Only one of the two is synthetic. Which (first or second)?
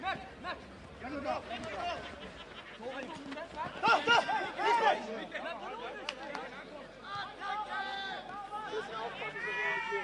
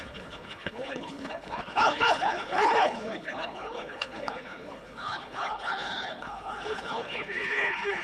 second